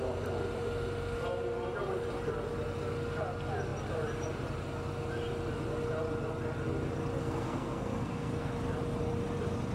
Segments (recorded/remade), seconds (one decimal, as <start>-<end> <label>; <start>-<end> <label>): 0.0-7.2 recorded; 7.2-8.5 remade; 8.5-9.7 recorded